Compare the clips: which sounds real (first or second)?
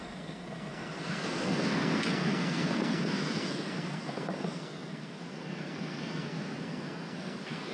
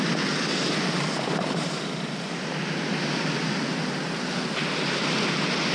second